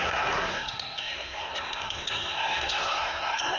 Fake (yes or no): yes